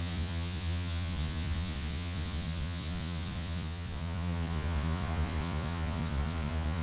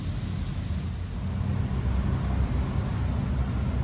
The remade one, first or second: first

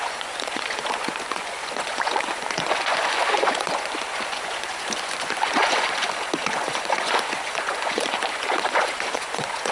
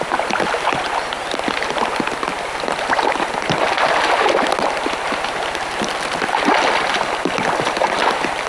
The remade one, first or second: first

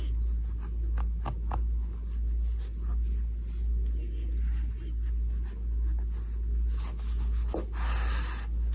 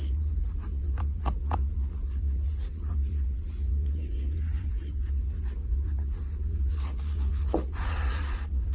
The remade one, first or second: second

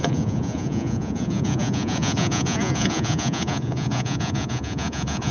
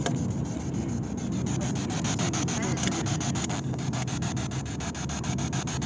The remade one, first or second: first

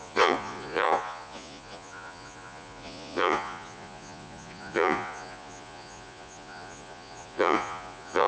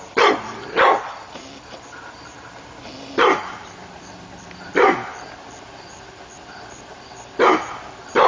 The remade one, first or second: first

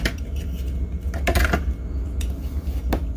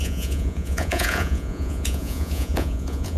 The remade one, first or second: second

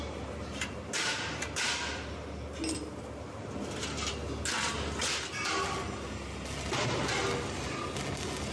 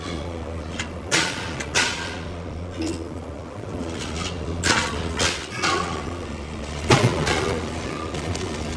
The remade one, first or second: second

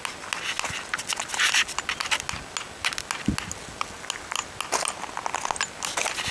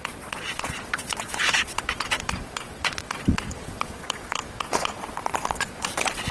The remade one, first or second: second